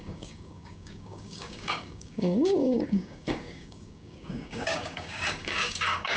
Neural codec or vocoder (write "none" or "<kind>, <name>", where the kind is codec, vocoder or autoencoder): codec, DAC